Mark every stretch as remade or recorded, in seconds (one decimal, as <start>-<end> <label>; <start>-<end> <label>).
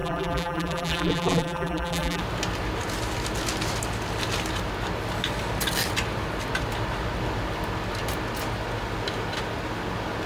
0.0-2.2 remade; 2.2-10.3 recorded